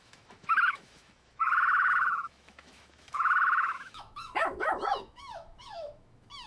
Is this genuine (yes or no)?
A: no